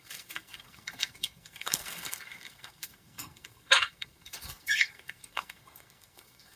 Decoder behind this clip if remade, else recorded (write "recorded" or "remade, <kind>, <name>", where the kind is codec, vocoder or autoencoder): remade, codec, SNAC